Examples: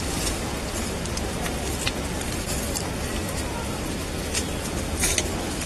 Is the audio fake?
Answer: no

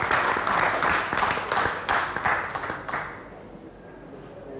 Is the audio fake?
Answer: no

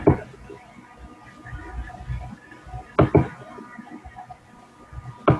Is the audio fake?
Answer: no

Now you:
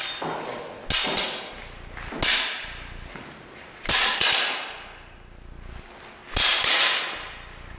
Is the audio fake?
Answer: no